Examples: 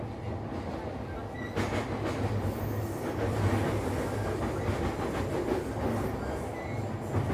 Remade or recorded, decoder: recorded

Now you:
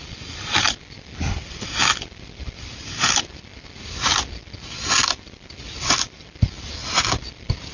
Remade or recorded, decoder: recorded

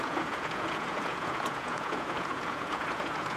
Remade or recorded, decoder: remade, vocoder, Vocos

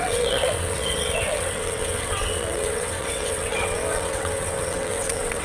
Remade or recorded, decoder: remade, vocoder, WaveNeXt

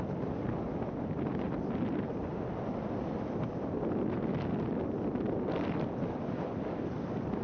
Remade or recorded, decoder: recorded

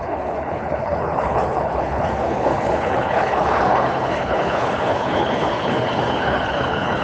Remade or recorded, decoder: remade, codec, HILCodec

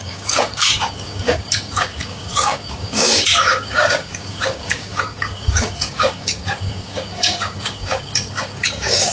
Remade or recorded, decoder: remade, codec, DAC